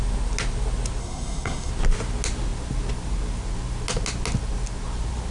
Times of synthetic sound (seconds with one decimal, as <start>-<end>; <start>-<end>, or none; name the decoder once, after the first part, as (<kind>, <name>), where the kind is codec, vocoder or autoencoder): 1.0-1.7 (codec, SNAC)